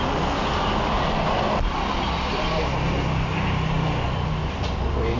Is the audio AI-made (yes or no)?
no